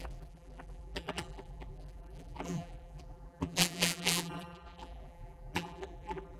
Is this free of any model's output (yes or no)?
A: no